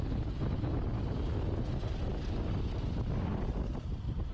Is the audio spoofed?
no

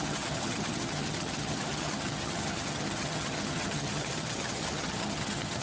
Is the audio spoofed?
yes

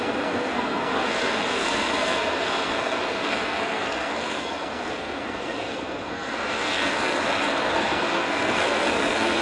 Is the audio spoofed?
yes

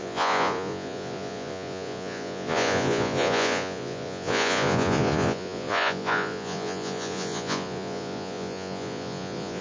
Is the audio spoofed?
yes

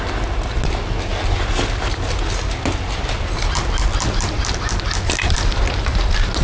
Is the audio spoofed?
no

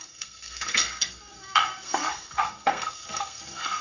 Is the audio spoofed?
yes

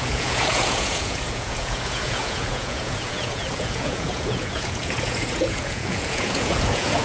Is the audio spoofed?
yes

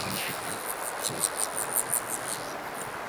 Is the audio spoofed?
no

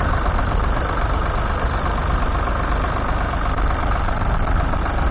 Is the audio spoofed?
no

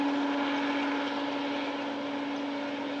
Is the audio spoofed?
no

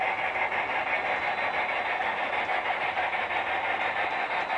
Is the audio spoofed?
no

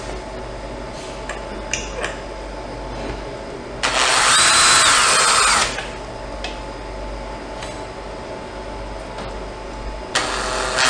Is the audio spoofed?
no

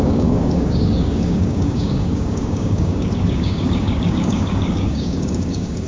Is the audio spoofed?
yes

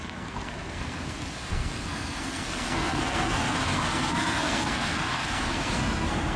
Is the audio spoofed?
yes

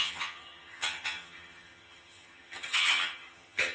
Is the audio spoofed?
yes